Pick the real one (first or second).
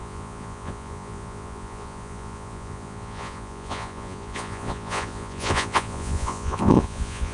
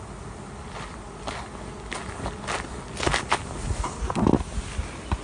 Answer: second